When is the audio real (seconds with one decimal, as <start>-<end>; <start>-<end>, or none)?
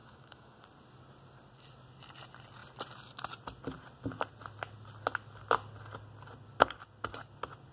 0.6-7.7